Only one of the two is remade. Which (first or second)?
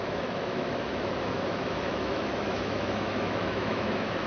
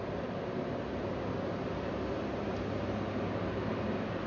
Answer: first